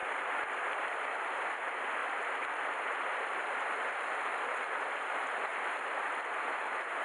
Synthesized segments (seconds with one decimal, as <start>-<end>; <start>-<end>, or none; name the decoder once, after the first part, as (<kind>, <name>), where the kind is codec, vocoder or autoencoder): 0.0-0.5 (vocoder, BigVGAN v2)